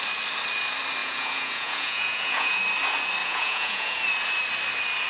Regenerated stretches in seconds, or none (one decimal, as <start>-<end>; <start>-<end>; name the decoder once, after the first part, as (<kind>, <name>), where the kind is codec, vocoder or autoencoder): 1.0-2.6 (vocoder, Vocos); 3.2-4.0